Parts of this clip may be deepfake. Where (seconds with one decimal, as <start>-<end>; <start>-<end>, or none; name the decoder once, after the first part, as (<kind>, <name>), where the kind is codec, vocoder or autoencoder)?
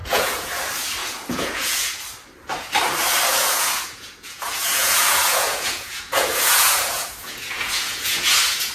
0.0-0.6 (vocoder, Vocos); 1.0-2.0; 3.3-8.7